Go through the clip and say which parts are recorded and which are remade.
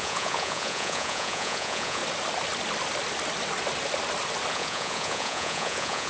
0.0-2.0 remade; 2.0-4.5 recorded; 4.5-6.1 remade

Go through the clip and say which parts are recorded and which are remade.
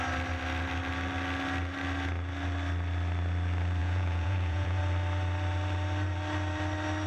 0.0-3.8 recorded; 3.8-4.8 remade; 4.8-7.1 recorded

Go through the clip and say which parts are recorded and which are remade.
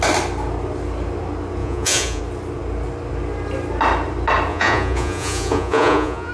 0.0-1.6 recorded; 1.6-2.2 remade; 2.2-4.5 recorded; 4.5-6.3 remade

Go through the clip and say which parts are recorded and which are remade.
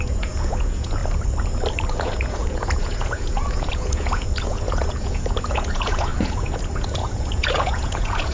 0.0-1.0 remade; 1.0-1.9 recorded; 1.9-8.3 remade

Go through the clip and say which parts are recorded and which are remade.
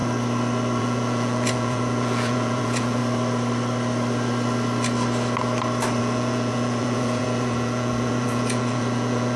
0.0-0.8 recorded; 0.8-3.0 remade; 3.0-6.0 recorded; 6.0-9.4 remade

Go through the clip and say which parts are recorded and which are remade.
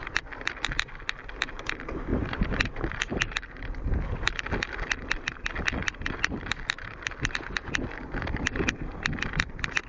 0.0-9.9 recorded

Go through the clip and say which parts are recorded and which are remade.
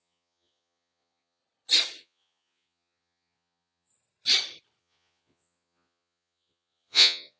0.0-1.4 remade; 1.4-2.0 recorded; 2.0-3.9 remade; 3.9-4.8 recorded; 4.8-7.4 remade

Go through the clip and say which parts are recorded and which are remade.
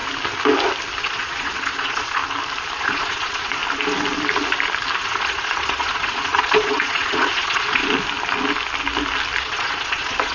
0.0-1.0 recorded; 1.0-2.2 remade; 2.2-2.8 recorded; 2.8-3.6 remade; 3.6-5.0 recorded; 5.0-7.8 remade; 7.8-9.4 recorded; 9.4-10.3 remade